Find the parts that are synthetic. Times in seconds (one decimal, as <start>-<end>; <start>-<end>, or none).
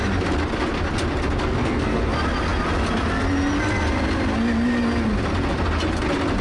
1.4-2.0